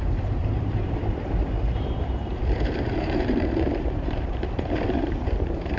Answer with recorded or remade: remade